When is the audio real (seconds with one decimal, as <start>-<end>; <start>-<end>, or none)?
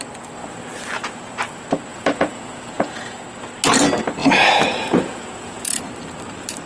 0.0-1.9; 3.2-4.2; 5.8-6.7